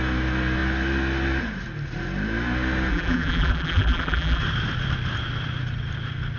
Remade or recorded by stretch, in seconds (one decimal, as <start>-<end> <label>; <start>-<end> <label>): 0.0-2.9 recorded; 2.9-4.4 remade; 4.4-6.4 recorded